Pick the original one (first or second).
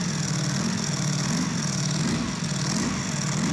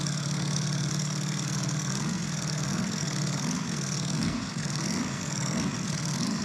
first